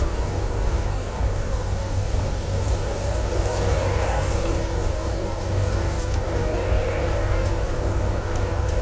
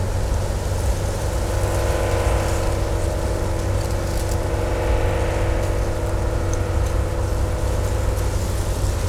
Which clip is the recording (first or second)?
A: second